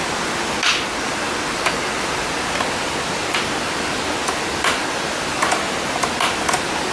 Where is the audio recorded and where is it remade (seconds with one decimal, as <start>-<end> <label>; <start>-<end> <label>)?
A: 0.0-6.9 recorded